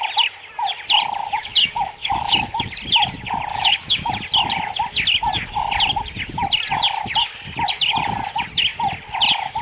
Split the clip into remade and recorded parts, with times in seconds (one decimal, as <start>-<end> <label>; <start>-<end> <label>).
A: 0.0-1.4 recorded; 1.4-2.7 remade; 2.7-3.5 recorded; 3.5-4.1 remade; 4.1-9.6 recorded